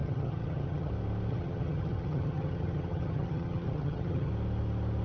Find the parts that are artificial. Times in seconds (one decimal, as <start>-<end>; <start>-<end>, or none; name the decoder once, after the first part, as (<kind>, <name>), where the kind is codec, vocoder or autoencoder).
0.0-0.9 (vocoder, HiFi-GAN); 1.3-4.3